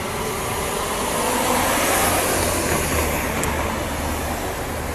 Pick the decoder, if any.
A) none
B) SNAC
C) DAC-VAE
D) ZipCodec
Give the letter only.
A